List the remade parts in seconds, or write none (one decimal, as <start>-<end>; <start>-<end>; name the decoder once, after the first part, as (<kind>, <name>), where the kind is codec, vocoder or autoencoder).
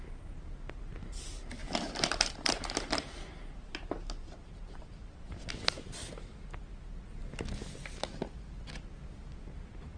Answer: 1.6-5.5 (vocoder, BigVGAN v2)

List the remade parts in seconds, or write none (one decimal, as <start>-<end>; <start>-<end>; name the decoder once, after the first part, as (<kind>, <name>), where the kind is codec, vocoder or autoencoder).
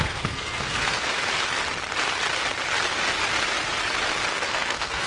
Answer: 0.0-1.2 (codec, SNAC); 4.3-5.1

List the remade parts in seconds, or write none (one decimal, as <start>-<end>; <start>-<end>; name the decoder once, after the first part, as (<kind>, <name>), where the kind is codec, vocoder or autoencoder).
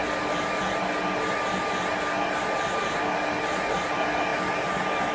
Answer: none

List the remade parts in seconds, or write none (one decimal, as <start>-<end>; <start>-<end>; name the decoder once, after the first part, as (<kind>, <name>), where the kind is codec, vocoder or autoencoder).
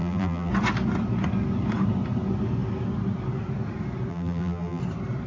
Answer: 0.0-0.5 (vocoder, BigVGAN v2); 4.1-4.8